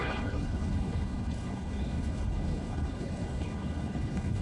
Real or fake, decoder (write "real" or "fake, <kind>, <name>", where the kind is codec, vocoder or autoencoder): fake, codec, HILCodec